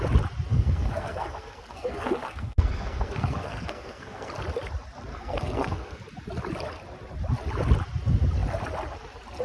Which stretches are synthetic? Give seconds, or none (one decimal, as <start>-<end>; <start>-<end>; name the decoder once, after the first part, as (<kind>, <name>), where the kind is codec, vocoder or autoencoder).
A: 0.5-4.3 (codec, SNAC); 5.1-6.0